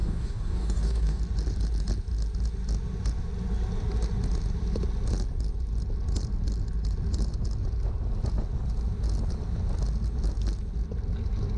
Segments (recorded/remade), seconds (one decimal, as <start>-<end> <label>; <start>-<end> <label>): 0.0-1.2 remade; 1.2-11.6 recorded

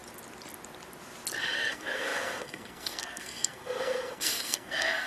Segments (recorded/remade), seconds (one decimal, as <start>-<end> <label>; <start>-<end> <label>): 0.0-1.4 recorded; 1.4-5.1 remade